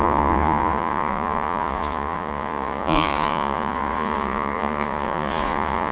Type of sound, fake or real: fake